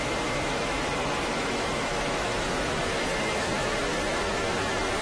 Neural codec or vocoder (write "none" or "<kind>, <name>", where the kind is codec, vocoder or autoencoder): autoencoder, DAC-VAE